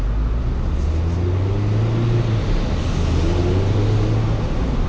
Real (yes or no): yes